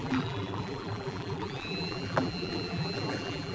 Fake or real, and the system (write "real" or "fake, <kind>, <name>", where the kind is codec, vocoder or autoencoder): fake, vocoder, BigVGAN v2